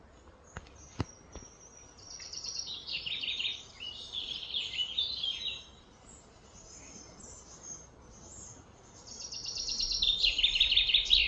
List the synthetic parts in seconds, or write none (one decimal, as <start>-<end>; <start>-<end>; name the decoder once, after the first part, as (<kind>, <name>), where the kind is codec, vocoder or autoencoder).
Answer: 8.3-9.0 (vocoder, BigVGAN v2)